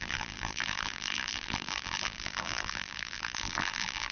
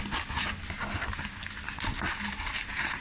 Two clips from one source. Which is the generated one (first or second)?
first